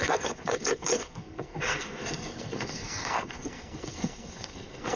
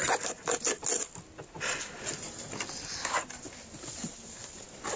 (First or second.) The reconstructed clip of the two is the first